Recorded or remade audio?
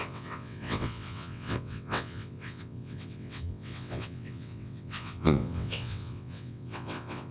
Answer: remade